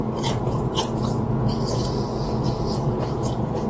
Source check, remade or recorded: remade